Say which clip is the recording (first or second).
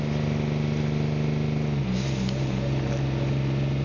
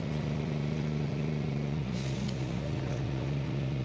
first